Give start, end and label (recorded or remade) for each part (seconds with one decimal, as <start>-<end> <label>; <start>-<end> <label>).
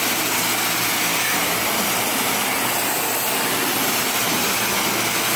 0.0-5.4 recorded